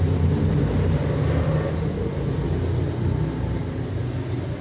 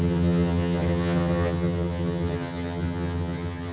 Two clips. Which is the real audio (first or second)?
first